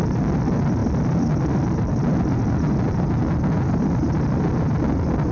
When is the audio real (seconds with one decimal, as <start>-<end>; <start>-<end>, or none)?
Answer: 0.0-5.3